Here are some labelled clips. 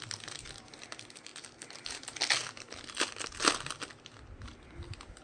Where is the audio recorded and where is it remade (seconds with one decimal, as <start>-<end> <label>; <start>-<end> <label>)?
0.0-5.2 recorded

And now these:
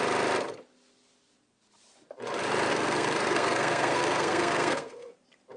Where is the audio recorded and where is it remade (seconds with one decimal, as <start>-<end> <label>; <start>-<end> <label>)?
0.0-2.7 recorded; 2.7-5.1 remade; 5.1-5.6 recorded

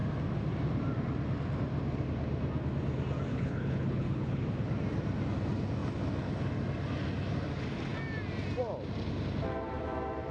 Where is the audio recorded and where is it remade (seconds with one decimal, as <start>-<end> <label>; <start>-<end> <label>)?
0.0-3.3 recorded; 3.3-4.4 remade; 4.4-10.3 recorded

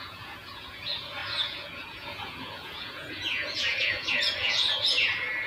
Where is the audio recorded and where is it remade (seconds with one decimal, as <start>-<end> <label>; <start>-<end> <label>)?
0.0-5.5 remade

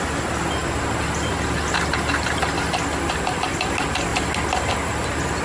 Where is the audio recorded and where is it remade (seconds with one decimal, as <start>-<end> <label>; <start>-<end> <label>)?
0.0-5.4 recorded

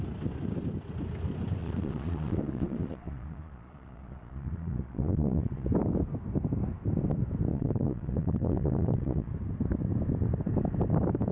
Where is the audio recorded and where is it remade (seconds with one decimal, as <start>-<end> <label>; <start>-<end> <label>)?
0.0-1.6 recorded; 1.6-5.7 remade; 5.7-7.5 recorded; 7.5-9.3 remade; 9.3-11.3 recorded

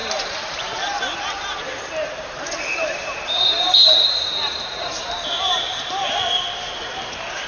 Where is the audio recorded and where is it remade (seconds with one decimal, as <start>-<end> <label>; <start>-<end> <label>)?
0.0-7.5 remade